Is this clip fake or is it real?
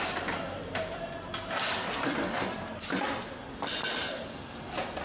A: real